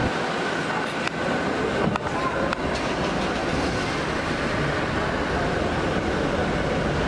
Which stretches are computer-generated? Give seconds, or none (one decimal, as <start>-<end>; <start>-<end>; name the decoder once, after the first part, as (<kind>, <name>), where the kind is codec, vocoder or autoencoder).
none